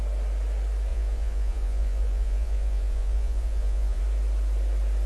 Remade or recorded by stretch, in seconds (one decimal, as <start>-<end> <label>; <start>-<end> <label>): 0.0-0.9 recorded; 0.9-4.0 remade; 4.0-5.1 recorded